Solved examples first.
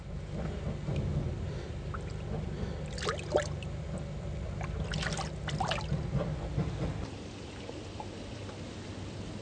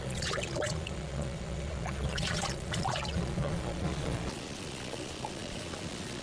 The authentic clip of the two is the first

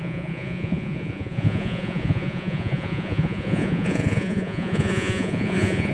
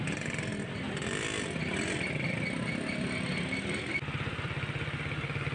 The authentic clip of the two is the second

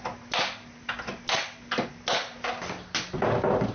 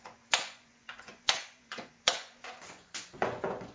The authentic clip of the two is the first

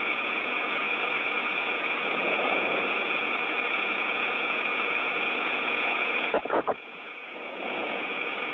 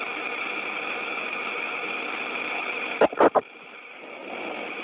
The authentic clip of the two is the second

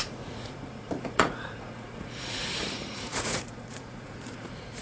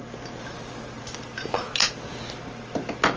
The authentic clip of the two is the second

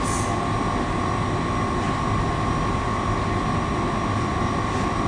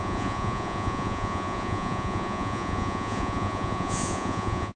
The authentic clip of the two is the first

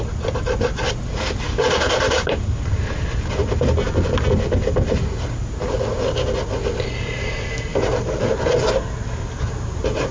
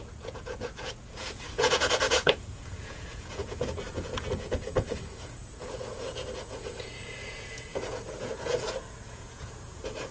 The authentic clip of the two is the first